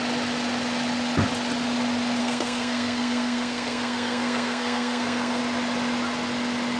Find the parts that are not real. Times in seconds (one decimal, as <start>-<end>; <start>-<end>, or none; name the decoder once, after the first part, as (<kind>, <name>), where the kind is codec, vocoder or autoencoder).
2.2-5.4 (codec, SNAC)